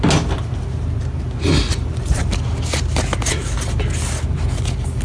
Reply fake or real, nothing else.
real